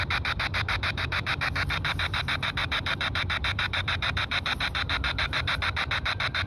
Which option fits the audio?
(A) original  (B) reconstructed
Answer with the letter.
B